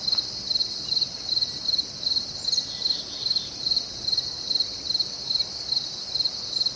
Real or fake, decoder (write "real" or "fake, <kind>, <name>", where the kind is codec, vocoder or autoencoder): real